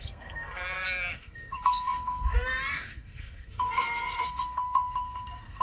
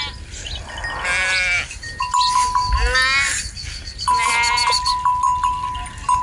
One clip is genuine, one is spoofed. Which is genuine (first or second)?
second